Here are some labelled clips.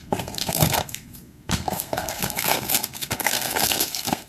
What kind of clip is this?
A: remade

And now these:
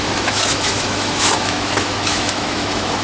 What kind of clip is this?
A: remade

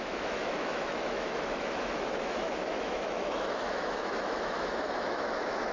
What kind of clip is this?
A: remade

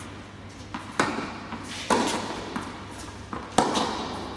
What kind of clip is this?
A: recorded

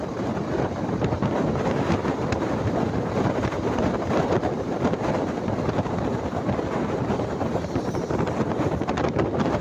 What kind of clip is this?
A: remade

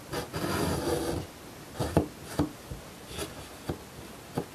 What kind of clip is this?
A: recorded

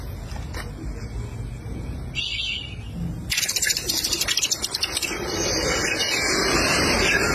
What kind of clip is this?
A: recorded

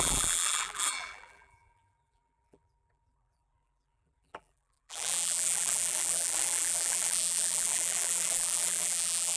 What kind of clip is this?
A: remade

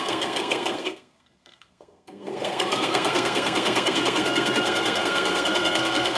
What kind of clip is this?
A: remade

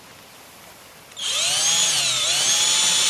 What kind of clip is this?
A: recorded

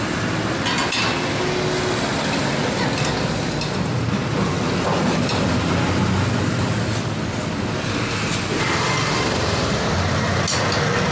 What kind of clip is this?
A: recorded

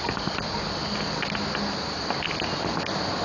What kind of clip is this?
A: recorded